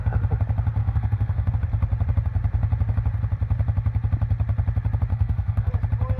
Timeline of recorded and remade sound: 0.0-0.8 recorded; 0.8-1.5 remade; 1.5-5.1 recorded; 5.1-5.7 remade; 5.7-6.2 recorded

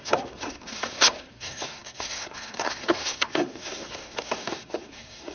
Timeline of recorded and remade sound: 0.0-5.3 remade

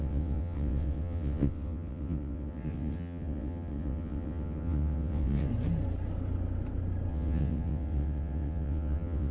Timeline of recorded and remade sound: 0.0-5.5 remade; 5.5-7.1 recorded; 7.1-9.3 remade

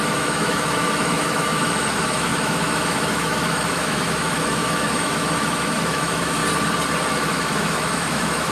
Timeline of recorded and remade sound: 0.0-6.4 remade; 6.4-7.2 recorded; 7.2-8.5 remade